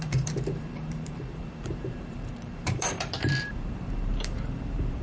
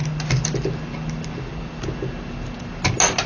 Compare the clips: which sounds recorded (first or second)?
second